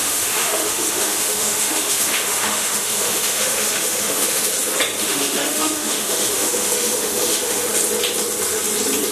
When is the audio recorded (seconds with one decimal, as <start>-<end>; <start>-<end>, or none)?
4.5-5.0; 7.7-9.1